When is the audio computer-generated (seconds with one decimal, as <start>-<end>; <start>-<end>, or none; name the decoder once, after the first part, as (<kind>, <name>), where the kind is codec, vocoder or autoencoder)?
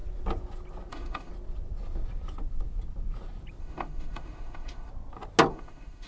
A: 0.9-1.3 (autoencoder, DAC-VAE); 3.6-4.9; 5.5-6.1